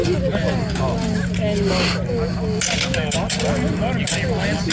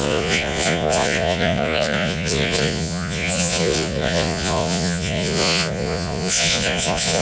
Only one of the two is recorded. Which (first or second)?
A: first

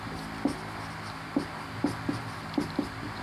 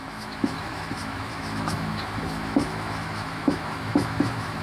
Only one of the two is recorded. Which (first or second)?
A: first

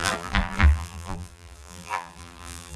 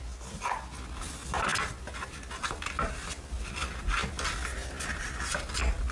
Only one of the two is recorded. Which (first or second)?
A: second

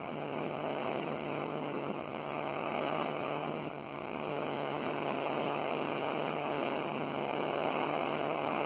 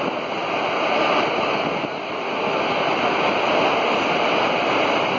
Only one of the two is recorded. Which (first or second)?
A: second